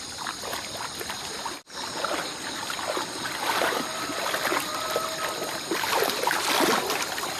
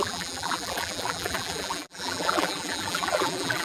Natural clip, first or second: first